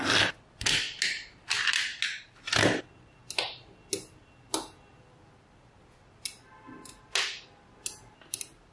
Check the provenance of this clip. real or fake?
real